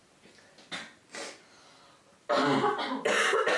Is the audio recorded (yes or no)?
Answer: yes